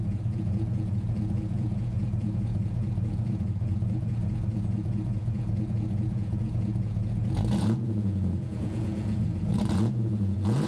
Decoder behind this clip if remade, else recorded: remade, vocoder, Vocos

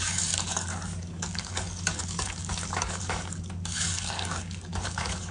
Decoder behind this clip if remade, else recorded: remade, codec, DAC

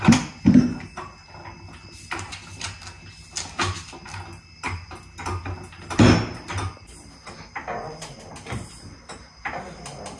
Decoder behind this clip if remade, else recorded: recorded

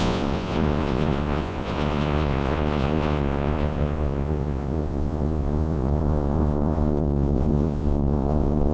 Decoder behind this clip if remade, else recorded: remade, vocoder, Vocos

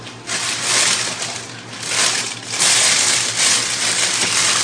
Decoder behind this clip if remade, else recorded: recorded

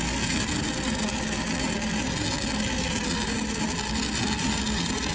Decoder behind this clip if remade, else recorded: recorded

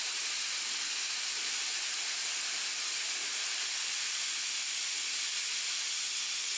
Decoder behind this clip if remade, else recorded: recorded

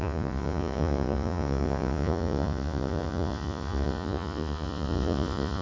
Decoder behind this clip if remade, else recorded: remade, vocoder, Vocos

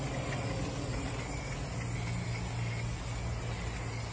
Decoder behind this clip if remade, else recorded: recorded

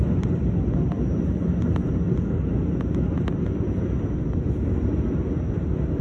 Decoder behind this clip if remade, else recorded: recorded